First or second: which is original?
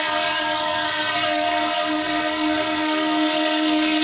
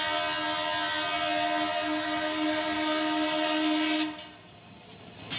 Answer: second